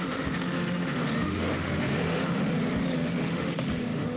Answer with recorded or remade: remade